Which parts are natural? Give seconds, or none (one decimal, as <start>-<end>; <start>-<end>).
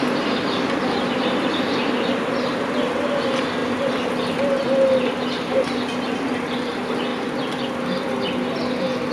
0.0-7.1; 8.1-9.1